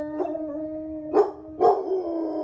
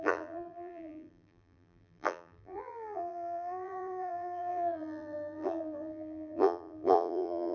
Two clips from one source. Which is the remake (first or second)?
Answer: second